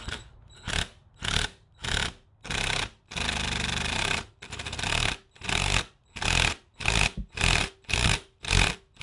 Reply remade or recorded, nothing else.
recorded